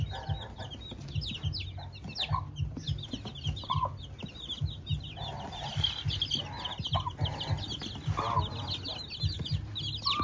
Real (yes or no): yes